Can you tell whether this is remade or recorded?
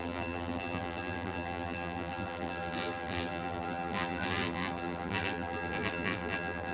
remade